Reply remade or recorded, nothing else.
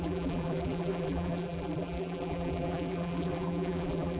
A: remade